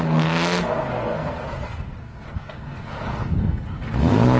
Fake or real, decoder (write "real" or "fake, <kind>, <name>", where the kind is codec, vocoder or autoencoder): fake, codec, SNAC